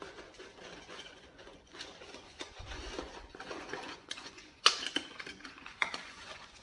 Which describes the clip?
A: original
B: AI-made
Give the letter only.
B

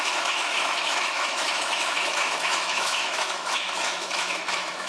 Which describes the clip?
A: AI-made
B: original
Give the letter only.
A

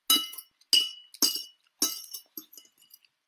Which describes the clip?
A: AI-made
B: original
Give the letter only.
B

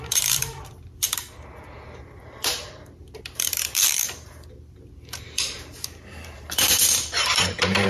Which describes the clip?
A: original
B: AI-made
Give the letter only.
B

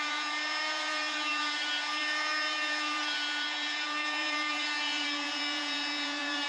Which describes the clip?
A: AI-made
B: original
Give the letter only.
A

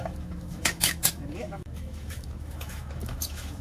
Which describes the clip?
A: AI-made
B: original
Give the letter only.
A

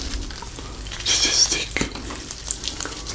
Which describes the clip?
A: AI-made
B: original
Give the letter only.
A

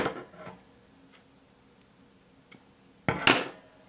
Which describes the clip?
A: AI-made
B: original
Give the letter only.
B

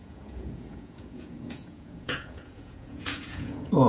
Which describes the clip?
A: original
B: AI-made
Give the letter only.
B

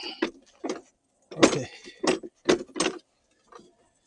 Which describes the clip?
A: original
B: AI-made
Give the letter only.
A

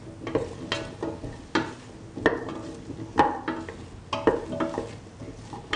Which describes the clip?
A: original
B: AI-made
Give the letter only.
A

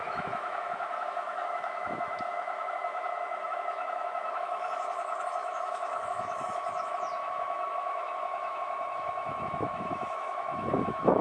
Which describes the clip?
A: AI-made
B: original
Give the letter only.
A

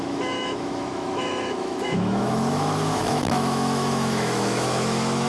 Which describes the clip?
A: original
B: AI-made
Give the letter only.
B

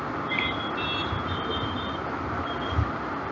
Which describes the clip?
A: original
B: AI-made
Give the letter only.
A